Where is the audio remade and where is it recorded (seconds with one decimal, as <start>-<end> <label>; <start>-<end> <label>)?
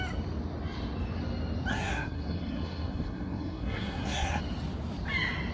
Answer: 0.0-1.7 recorded; 1.7-4.4 remade; 4.4-5.5 recorded